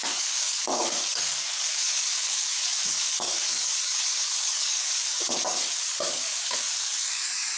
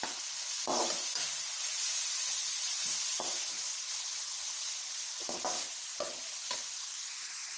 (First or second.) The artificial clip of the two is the first